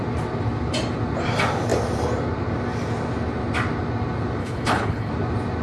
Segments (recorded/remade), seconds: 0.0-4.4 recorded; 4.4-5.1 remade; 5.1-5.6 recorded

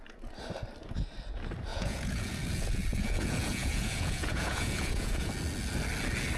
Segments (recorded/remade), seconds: 0.0-1.7 recorded; 1.7-5.3 remade; 5.3-6.4 recorded